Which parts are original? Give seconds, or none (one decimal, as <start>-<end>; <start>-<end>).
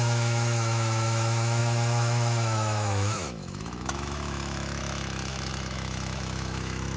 none